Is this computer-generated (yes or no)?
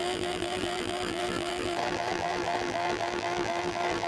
yes